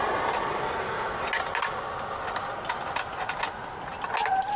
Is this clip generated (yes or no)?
no